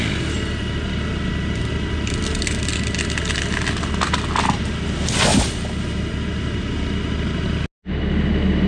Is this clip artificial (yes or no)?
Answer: no